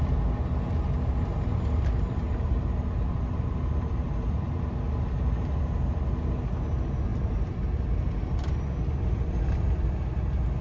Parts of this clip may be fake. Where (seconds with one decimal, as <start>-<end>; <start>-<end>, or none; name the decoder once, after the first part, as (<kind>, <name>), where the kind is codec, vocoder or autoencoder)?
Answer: none